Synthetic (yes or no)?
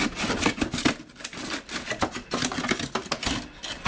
no